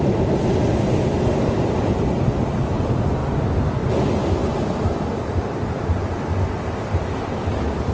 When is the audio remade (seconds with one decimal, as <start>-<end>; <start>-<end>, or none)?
none